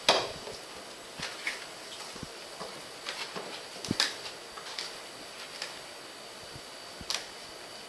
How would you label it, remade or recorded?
recorded